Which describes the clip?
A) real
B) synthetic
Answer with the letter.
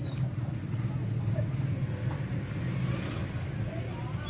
A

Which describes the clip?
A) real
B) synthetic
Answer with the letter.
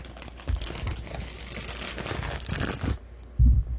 A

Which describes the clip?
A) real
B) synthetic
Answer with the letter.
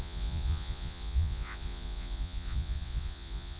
B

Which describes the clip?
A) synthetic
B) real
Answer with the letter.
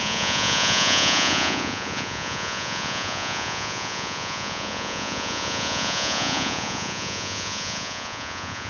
A